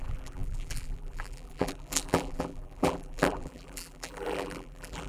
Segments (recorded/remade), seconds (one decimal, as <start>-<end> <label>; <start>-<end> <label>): 0.0-5.1 remade